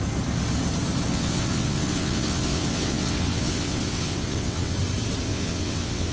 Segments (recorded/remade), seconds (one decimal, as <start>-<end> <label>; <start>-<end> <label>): 0.0-1.1 recorded; 1.1-4.8 remade; 4.8-5.3 recorded; 5.3-6.1 remade